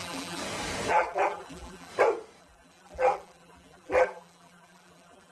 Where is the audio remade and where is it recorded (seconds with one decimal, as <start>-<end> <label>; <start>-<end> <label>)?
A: 0.0-0.4 remade; 0.4-0.9 recorded; 0.9-1.9 remade; 1.9-2.4 recorded; 2.4-5.3 remade